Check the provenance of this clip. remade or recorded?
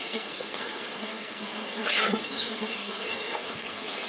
remade